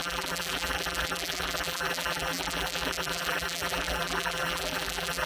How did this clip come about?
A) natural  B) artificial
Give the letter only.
B